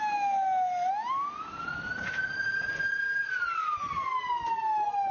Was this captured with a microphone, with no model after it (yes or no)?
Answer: yes